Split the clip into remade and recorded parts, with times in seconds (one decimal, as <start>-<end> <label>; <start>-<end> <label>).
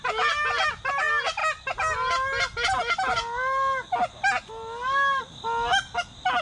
0.0-6.4 recorded